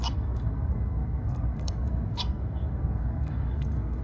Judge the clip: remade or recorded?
remade